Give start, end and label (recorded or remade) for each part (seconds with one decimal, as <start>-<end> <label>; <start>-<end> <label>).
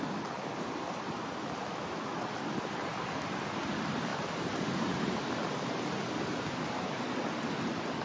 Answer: 0.0-4.1 recorded; 4.1-5.4 remade; 5.4-8.0 recorded